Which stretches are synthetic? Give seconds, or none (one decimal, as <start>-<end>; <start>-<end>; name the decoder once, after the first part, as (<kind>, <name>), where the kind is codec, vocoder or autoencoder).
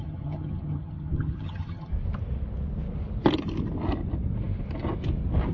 0.0-1.9 (vocoder, HiFi-GAN)